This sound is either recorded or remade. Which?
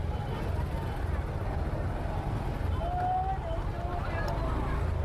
recorded